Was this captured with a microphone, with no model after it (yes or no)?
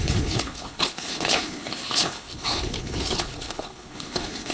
no